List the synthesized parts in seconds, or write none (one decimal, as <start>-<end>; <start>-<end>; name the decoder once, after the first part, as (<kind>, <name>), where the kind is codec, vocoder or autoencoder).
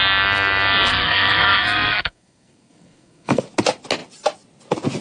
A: 0.9-3.4 (codec, SNAC)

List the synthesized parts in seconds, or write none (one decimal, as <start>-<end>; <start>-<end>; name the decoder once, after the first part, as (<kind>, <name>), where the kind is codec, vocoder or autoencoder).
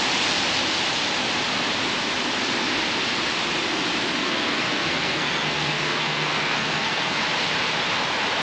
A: 4.2-7.2 (codec, SNAC)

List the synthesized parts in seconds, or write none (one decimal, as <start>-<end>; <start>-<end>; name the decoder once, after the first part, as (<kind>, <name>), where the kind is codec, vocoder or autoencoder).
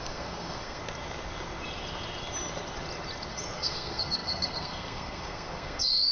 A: 0.0-0.8 (codec, SNAC); 3.3-6.1